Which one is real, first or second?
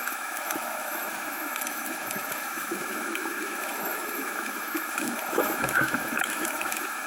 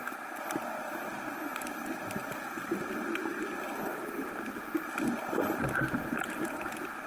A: second